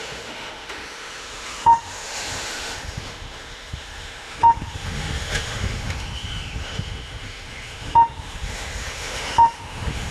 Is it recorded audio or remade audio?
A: remade